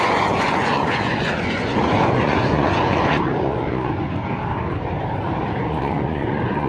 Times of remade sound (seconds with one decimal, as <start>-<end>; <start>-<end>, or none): 0.0-4.3; 5.6-6.7

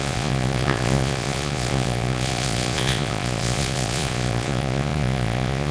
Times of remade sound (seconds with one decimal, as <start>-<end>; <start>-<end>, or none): 0.0-5.7

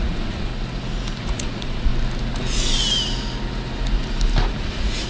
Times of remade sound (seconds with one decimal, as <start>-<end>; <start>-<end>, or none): 0.0-0.5; 1.2-1.9; 4.6-5.1

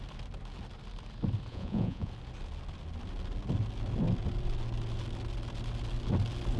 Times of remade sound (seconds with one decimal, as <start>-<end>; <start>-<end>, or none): 1.5-2.1

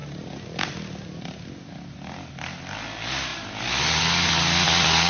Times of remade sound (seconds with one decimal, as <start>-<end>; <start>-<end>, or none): none